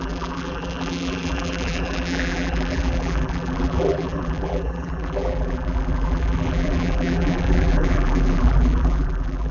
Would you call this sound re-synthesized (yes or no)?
yes